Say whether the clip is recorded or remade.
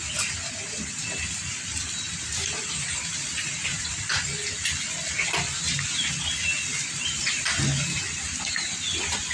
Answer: recorded